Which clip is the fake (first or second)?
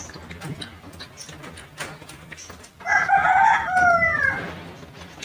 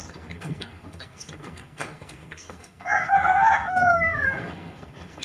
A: second